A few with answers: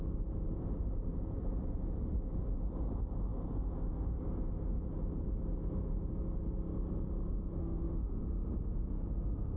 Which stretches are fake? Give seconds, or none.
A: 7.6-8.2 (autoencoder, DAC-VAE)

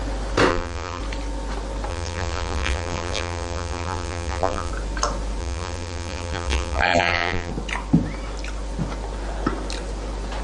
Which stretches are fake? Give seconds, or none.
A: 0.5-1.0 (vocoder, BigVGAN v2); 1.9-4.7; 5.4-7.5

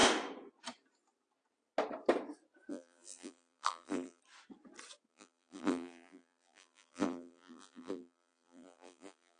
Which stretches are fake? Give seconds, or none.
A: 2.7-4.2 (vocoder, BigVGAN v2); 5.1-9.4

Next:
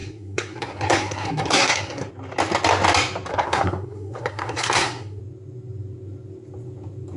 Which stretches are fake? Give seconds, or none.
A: 0.0-2.1 (codec, SNAC); 3.3-5.2

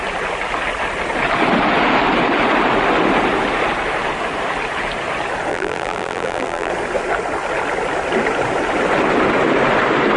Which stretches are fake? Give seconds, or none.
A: 5.5-6.7 (vocoder, BigVGAN v2)

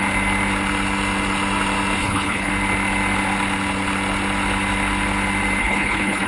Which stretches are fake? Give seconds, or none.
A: 2.0-2.5 (codec, HILCodec); 5.6-6.3

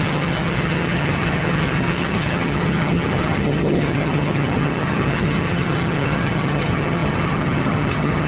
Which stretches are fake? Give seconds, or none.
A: 0.0-8.3 (vocoder, HiFi-GAN)